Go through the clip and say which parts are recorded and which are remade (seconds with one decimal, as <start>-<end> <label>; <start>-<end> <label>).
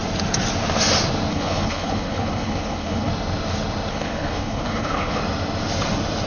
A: 0.0-1.3 recorded; 1.3-3.1 remade; 3.1-3.9 recorded; 3.9-5.2 remade; 5.2-6.3 recorded